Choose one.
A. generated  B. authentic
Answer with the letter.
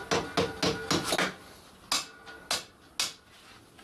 B